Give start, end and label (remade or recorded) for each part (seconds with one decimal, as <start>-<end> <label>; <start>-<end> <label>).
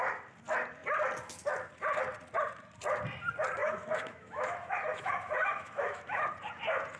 0.0-3.6 recorded; 3.6-6.3 remade; 6.3-7.0 recorded